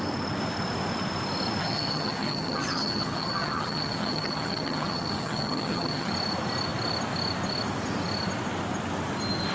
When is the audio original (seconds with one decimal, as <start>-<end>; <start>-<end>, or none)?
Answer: 0.0-1.6; 6.1-9.5